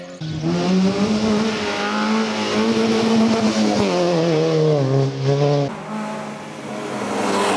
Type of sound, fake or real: real